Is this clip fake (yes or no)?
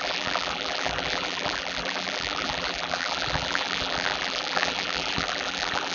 yes